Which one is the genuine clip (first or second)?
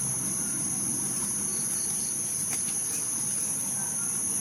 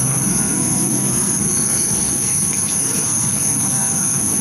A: first